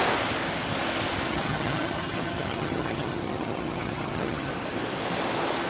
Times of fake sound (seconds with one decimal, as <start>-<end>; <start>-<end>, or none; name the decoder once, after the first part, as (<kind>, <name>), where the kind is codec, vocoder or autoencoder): 1.3-4.5 (vocoder, HiFi-GAN)